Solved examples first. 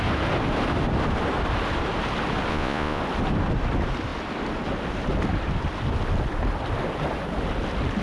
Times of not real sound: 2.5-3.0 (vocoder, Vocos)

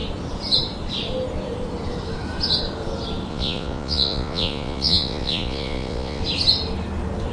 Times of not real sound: 3.3-6.2 (vocoder, Vocos)

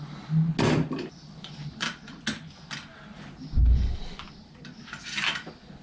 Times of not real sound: none

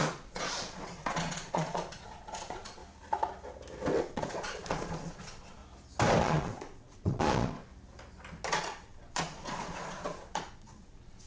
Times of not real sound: 0.0-2.8 (vocoder, Vocos); 4.0-5.6; 6.2-7.7; 8.5-11.3

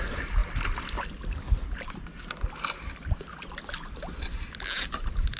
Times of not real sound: none

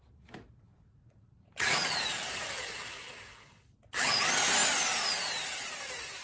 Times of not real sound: 0.7-1.9 (vocoder, Vocos)

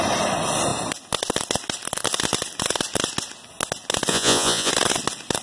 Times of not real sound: 4.1-4.7 (vocoder, Vocos)

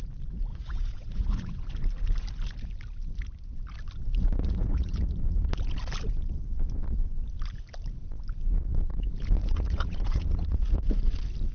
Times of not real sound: 0.5-1.7 (vocoder, Vocos); 4.2-5.5; 9.4-11.1